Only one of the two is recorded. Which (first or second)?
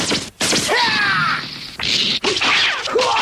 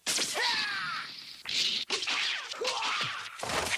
first